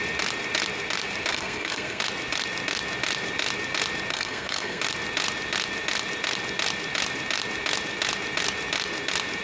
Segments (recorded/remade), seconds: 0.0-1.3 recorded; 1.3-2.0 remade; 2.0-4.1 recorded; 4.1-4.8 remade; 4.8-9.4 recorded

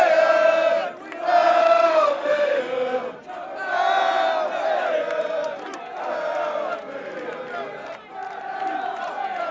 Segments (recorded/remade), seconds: 0.0-1.6 recorded; 1.6-2.6 remade; 2.6-9.5 recorded

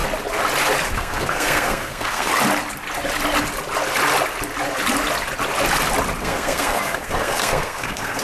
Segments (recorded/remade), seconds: 0.0-0.9 recorded; 0.9-2.3 remade; 2.3-6.2 recorded; 6.2-8.2 remade

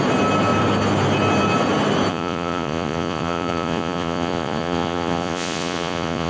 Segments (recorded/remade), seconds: 0.0-2.1 recorded; 2.1-6.3 remade

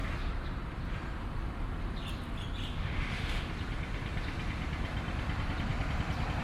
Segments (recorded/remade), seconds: 0.0-2.6 recorded; 2.6-3.5 remade; 3.5-6.4 recorded